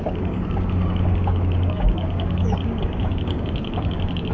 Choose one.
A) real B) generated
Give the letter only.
B